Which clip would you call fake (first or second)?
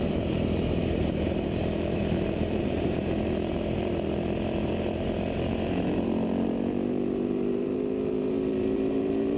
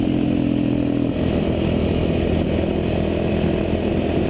first